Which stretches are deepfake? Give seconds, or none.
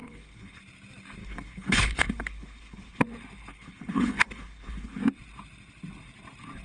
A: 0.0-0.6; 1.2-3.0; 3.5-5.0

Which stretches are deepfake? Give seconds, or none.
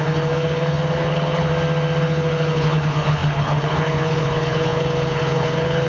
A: 0.0-1.5; 2.0-5.9